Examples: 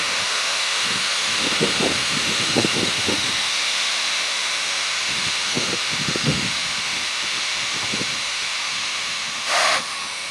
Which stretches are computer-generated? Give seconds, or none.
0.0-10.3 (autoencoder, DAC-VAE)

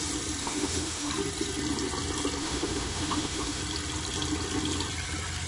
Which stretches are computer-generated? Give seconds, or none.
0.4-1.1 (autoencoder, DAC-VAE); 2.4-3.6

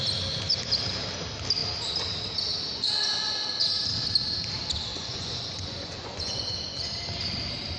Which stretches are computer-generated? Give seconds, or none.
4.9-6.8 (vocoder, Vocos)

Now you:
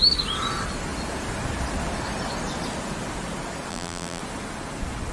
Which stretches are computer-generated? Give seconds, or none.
3.7-4.2 (vocoder, BigVGAN v2)

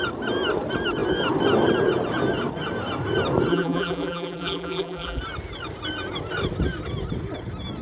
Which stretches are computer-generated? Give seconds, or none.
3.5-5.2 (vocoder, BigVGAN v2)

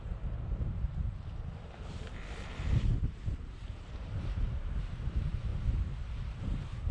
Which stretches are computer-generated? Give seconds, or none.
0.0-6.9 (vocoder, BigVGAN v2)

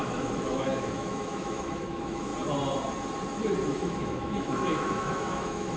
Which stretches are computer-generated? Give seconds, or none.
0.0-2.3 (autoencoder, DAC-VAE); 3.7-5.8

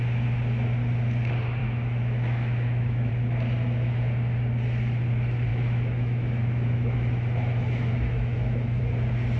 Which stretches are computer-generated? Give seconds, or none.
1.6-3.1 (autoencoder, DAC-VAE); 5.5-8.8